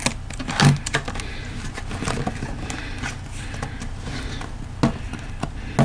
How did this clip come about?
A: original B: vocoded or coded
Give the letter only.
A